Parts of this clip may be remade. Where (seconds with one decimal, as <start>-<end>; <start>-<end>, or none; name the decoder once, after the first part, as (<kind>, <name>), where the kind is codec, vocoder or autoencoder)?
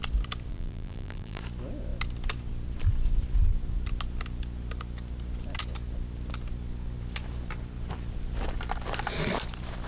0.5-1.4 (vocoder, BigVGAN v2)